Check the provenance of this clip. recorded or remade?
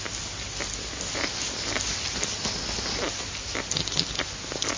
recorded